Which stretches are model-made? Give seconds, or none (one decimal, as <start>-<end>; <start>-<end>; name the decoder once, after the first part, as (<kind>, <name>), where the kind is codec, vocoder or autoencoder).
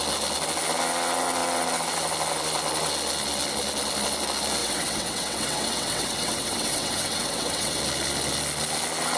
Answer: 4.6-7.8 (vocoder, WaveNeXt)